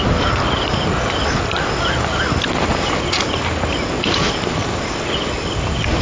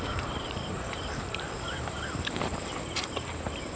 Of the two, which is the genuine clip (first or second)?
first